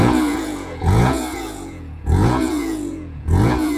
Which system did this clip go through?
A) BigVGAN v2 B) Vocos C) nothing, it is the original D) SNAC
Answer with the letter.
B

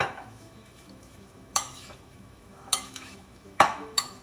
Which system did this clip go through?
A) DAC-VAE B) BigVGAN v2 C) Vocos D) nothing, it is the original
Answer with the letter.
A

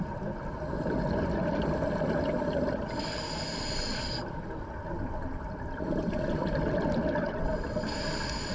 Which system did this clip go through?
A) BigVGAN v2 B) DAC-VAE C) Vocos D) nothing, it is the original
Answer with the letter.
D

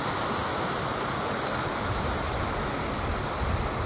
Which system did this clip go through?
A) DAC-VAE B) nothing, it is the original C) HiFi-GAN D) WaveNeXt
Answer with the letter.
B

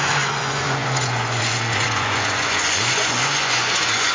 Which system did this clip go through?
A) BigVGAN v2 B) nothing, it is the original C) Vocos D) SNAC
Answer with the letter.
C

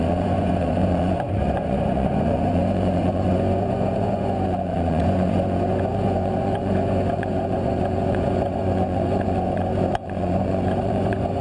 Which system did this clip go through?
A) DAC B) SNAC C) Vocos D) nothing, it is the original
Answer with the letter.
C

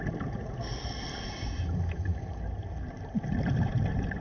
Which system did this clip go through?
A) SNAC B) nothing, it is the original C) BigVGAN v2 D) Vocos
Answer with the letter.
B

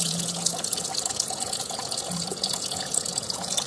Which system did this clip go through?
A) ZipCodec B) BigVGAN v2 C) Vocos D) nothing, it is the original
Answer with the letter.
C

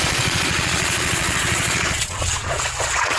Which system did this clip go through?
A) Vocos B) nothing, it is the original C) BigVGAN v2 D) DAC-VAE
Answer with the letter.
A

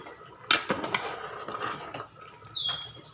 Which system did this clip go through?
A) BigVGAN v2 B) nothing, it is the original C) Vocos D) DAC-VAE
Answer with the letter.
B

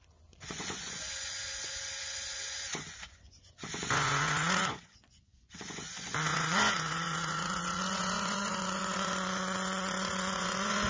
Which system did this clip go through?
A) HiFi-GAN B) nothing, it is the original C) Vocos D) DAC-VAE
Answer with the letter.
C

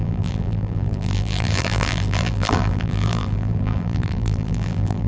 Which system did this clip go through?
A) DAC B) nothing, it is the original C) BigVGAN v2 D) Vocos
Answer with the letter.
C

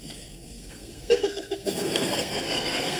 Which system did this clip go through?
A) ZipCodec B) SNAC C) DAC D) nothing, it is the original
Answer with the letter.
B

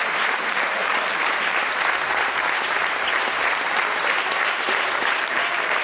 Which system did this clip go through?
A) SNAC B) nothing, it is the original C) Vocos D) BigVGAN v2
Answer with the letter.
D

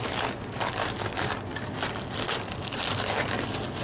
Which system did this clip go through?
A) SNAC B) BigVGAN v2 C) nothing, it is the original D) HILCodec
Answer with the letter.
C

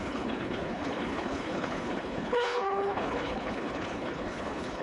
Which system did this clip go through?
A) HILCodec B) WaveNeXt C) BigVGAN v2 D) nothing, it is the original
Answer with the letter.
A